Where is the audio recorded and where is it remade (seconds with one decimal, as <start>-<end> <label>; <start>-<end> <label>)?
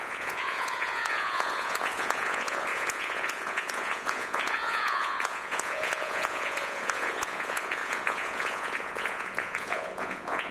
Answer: 0.0-10.5 remade